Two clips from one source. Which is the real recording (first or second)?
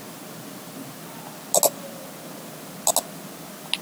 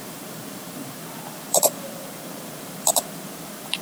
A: first